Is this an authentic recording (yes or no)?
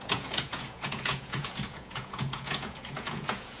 no